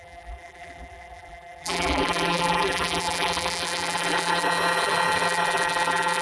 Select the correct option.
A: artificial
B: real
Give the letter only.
A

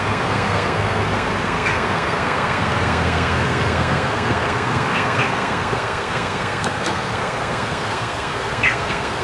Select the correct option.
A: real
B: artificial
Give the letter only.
B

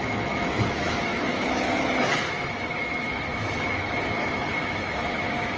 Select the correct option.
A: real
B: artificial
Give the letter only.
B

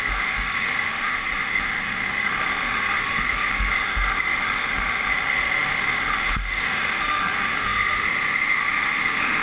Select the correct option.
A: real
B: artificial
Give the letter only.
B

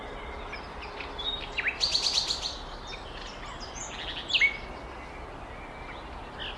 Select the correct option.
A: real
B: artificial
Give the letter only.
A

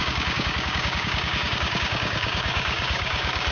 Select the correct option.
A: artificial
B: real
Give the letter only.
A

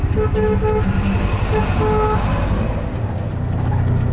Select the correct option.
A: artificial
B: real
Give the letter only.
B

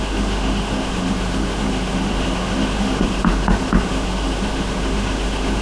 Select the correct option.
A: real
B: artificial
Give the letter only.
B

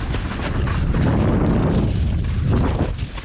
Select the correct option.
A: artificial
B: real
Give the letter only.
B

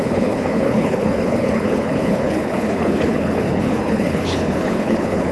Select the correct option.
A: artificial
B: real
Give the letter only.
A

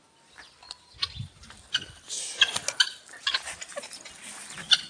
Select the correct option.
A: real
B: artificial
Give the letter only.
A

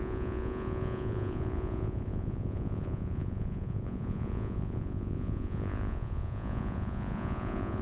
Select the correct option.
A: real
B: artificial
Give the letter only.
B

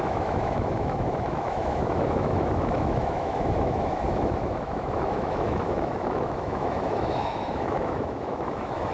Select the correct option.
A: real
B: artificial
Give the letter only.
B